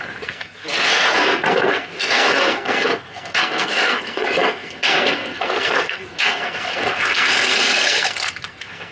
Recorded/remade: remade